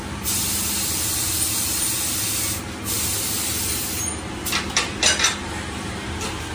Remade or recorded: recorded